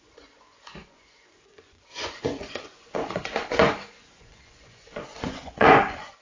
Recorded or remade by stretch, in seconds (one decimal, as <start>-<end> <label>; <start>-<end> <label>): 0.0-6.2 remade